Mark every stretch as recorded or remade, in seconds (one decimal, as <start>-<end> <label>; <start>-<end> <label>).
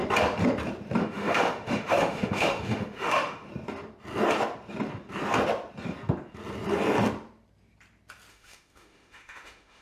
0.0-1.0 recorded; 1.0-3.5 remade; 3.5-8.3 recorded; 8.3-9.8 remade